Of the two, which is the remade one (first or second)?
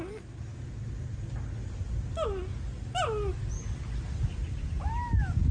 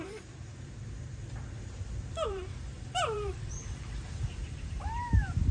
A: second